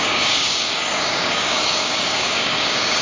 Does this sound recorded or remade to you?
remade